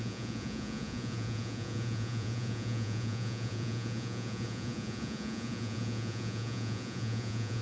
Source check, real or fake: fake